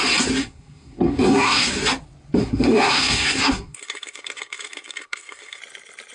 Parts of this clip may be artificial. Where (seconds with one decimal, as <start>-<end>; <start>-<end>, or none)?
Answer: 0.4-1.7; 2.4-5.6